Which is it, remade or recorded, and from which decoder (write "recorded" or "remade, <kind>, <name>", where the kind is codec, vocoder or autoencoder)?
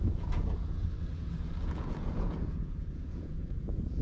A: remade, vocoder, Vocos